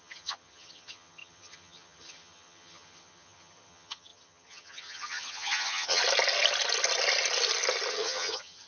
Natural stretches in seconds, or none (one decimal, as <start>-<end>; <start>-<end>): 6.0-7.9